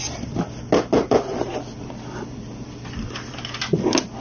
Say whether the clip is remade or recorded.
recorded